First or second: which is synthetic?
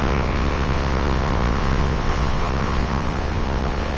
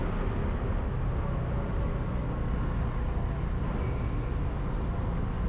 first